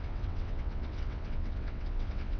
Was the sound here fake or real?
fake